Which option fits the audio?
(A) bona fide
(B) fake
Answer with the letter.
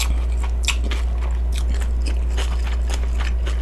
A